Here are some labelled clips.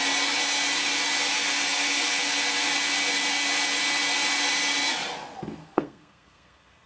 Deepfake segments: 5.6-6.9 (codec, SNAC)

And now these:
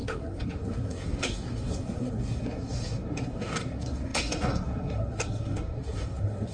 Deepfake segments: 0.0-6.5 (codec, SNAC)

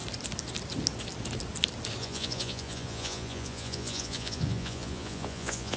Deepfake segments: 2.0-5.8 (vocoder, Vocos)

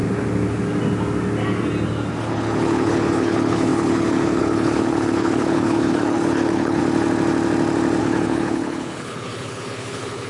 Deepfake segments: 2.2-6.8 (codec, HILCodec); 8.0-10.3

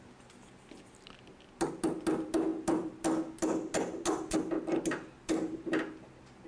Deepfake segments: none

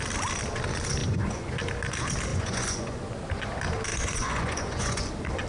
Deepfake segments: 1.0-1.5 (vocoder, Vocos); 2.3-3.0; 3.9-5.1

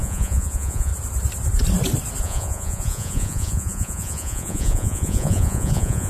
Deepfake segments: 0.0-0.9 (vocoder, Vocos); 2.2-6.1